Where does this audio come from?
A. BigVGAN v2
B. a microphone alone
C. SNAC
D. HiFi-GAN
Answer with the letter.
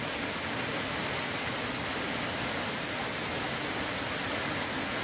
B